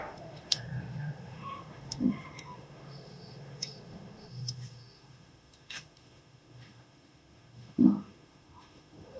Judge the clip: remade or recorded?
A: remade